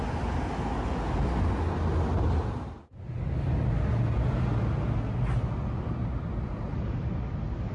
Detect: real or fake real